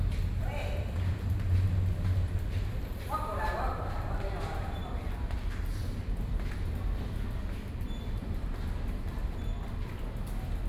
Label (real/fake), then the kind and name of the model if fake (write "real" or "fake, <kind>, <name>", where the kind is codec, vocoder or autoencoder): real